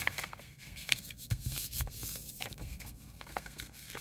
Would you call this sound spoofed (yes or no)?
yes